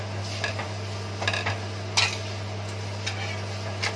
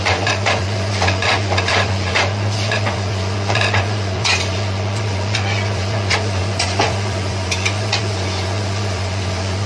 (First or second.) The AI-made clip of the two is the second